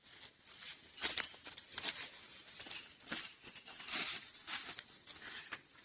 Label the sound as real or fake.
real